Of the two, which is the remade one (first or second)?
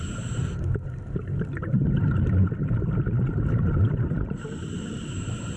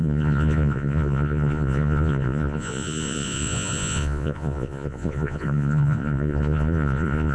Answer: second